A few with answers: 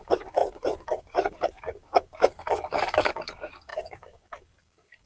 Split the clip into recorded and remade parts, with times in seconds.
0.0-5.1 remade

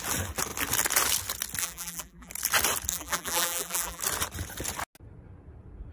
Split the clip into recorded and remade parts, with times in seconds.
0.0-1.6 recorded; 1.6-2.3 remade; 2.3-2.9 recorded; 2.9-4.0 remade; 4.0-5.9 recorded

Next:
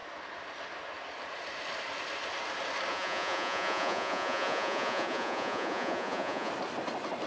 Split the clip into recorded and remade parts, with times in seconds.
0.0-2.9 recorded; 2.9-6.5 remade; 6.5-7.3 recorded

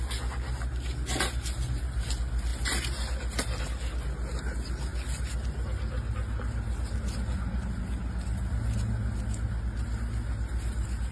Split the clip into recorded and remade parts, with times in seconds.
0.0-11.1 recorded

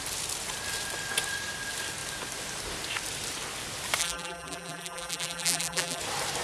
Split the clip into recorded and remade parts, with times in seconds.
0.0-4.0 recorded; 4.0-6.0 remade; 6.0-6.4 recorded

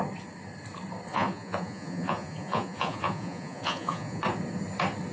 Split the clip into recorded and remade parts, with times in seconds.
0.0-1.1 recorded; 1.1-4.2 remade; 4.2-5.1 recorded